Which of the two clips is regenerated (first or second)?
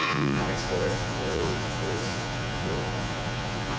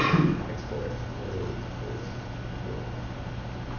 first